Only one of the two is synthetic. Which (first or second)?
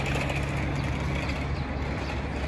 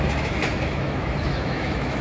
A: second